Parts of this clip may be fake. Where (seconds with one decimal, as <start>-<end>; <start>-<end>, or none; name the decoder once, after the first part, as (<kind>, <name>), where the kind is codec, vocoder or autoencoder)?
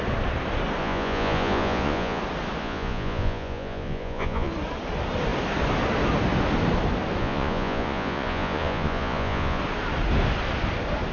0.8-2.2 (vocoder, Vocos); 2.6-4.5; 7.2-9.6